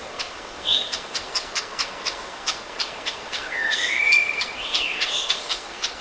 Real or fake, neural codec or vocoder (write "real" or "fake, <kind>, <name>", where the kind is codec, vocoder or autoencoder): fake, codec, SNAC